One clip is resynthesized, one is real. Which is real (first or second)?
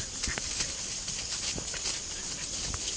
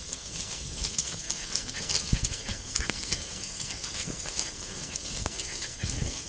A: first